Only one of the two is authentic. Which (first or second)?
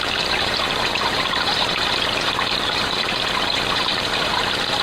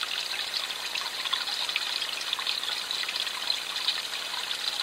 second